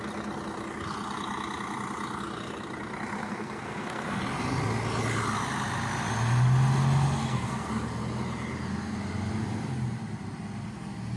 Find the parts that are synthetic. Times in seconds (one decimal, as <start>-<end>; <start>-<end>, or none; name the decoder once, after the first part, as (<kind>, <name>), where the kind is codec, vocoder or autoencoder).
3.2-4.2 (codec, SNAC); 7.2-7.7